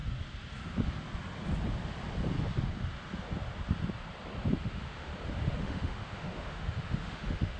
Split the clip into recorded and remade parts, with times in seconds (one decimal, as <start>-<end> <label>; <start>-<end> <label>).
0.0-4.6 recorded; 4.6-5.1 remade; 5.1-5.6 recorded; 5.6-7.6 remade